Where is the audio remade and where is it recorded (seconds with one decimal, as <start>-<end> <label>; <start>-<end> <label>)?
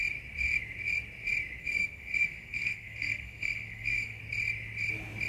0.0-1.6 recorded; 1.6-4.2 remade; 4.2-5.3 recorded